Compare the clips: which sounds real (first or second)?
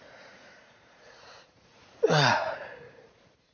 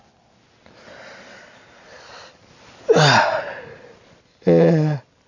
second